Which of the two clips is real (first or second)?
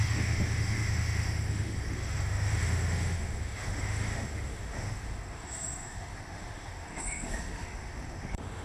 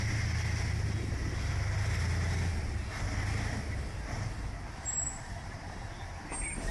second